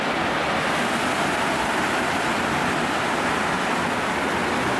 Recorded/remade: recorded